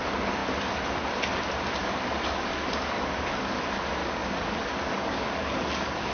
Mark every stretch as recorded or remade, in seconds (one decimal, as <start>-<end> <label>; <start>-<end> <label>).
0.0-1.8 recorded; 1.8-3.6 remade; 3.6-4.0 recorded; 4.0-6.1 remade